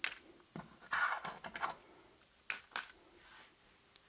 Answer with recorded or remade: recorded